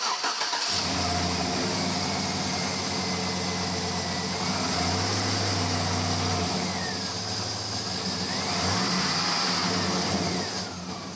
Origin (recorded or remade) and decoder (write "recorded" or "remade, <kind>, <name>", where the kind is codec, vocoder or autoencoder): recorded